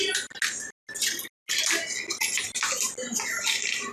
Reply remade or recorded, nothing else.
recorded